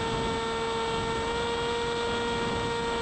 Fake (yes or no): no